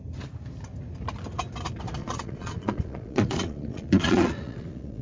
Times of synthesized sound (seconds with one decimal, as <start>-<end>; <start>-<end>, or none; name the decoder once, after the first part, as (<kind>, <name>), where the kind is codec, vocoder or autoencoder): 2.0-5.0 (vocoder, Vocos)